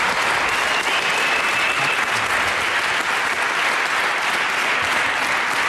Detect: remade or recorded recorded